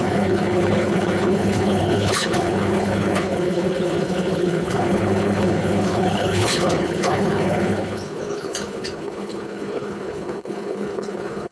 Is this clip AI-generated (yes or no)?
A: yes